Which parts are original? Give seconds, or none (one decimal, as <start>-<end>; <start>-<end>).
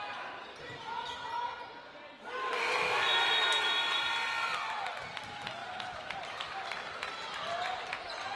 0.0-8.4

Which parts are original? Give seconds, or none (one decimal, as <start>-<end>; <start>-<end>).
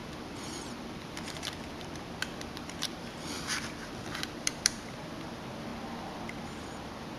5.7-7.2